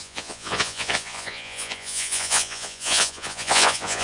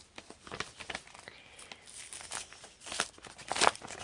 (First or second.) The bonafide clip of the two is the second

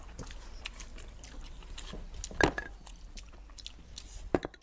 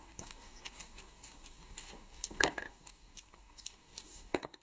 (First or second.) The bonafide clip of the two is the first